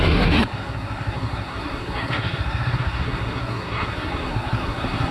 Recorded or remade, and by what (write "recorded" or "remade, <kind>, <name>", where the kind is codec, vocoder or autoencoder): remade, codec, SNAC